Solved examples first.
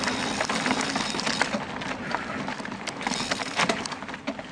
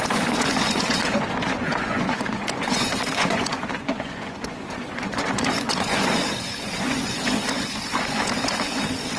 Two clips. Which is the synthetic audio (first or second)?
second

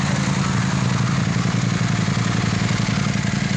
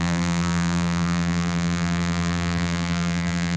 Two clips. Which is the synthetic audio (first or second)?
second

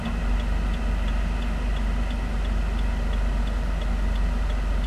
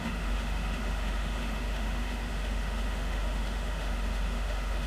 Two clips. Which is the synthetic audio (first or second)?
second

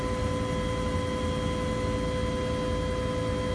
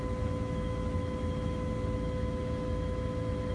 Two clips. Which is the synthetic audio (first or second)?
second